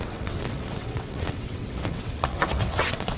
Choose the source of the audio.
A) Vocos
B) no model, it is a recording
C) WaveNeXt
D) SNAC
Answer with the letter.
C